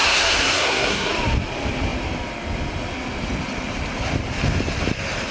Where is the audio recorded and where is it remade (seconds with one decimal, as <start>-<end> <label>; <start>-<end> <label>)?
0.0-1.1 remade; 1.1-5.3 recorded